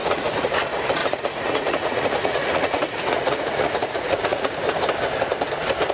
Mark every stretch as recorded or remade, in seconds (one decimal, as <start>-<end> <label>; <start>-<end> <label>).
0.0-0.5 remade; 0.5-1.0 recorded; 1.0-4.5 remade; 4.5-5.9 recorded